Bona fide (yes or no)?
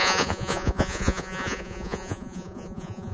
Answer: no